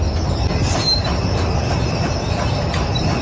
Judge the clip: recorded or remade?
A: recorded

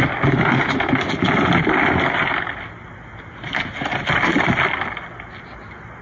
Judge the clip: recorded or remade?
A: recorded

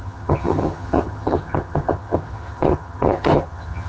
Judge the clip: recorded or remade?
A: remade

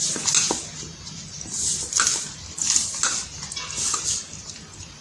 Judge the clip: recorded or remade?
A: recorded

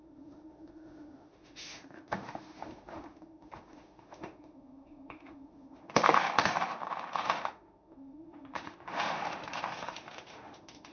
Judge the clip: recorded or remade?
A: remade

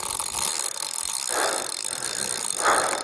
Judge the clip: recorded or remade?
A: recorded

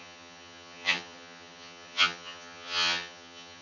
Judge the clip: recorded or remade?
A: remade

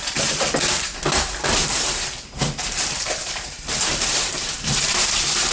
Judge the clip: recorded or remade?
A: remade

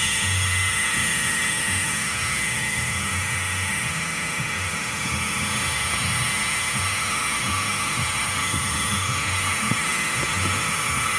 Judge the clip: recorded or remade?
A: remade